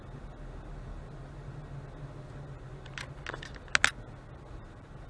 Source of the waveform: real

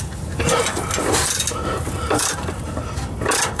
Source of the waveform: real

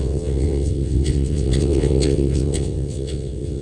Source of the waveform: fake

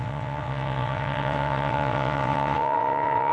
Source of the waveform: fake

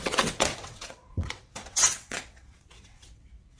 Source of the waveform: fake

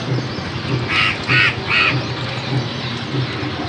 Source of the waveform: real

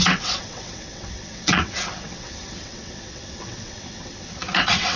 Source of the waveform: fake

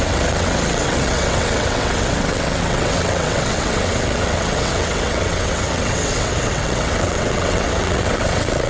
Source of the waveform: fake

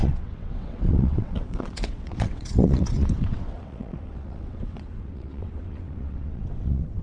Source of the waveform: fake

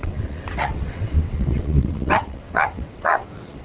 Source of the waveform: fake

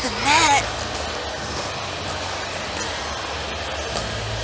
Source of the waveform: real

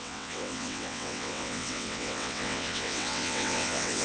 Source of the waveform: fake